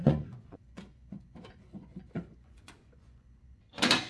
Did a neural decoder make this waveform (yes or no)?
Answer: yes